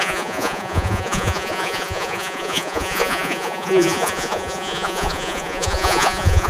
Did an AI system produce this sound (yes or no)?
yes